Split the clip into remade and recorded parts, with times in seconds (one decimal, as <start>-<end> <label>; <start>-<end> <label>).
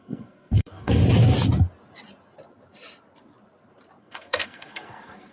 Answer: 0.0-1.0 remade; 1.0-4.0 recorded; 4.0-5.3 remade